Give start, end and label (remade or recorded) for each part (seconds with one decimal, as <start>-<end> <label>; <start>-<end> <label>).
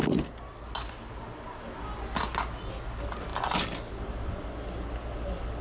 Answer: 0.0-5.6 recorded